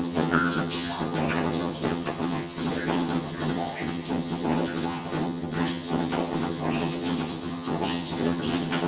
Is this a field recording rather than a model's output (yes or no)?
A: no